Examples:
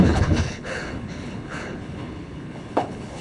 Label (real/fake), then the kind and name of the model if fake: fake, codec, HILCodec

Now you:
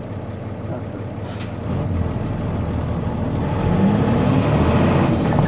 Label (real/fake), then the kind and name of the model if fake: real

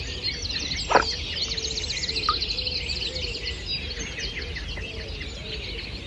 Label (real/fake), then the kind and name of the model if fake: real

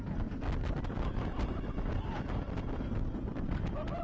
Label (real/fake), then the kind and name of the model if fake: real